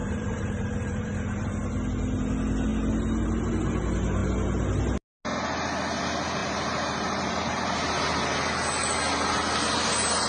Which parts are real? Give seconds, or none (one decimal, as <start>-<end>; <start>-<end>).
1.5-6.4; 8.0-10.3